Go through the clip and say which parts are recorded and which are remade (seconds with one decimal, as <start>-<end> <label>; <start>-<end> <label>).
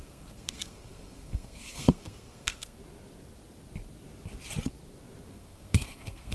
0.0-2.8 remade; 2.8-5.3 recorded; 5.3-6.3 remade